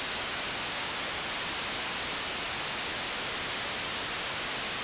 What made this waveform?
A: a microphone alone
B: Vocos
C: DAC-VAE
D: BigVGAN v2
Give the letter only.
A